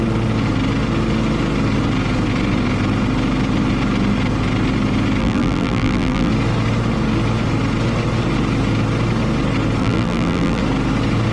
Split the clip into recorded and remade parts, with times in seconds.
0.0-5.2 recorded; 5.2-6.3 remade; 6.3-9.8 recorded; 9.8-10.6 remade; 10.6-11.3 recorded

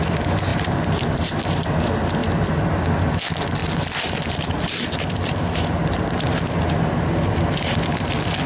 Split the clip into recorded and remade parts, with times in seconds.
0.0-0.5 recorded; 0.5-1.4 remade; 1.4-3.6 recorded; 3.6-5.9 remade; 5.9-8.5 recorded